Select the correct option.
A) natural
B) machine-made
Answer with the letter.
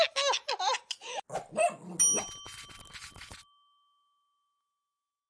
A